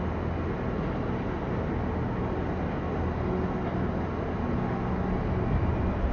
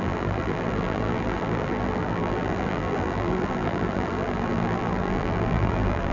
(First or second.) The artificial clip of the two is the second